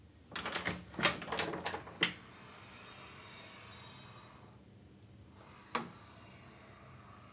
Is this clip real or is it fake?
real